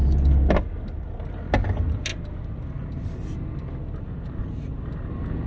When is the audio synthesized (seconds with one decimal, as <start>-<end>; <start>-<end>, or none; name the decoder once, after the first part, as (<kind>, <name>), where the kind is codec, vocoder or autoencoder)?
none